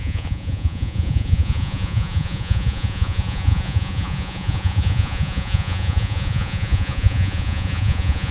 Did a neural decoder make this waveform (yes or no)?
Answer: yes